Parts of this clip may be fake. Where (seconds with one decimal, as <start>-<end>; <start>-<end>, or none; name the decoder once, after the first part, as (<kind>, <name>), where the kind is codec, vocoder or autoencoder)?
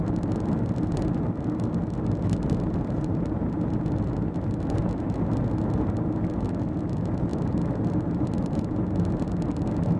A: none